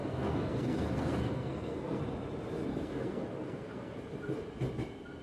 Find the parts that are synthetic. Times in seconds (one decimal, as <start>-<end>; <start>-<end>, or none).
0.0-2.0; 2.7-4.0